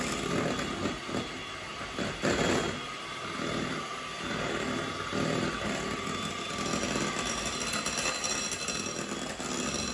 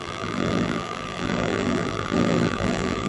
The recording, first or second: first